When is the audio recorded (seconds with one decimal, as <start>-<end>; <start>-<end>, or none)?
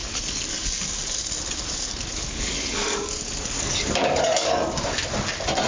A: 0.6-1.9; 4.6-5.7